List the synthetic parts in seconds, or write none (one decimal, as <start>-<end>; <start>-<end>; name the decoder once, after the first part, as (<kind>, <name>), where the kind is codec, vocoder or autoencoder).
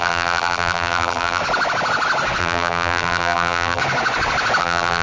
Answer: 0.0-1.4 (vocoder, BigVGAN v2); 2.4-3.8; 4.6-5.0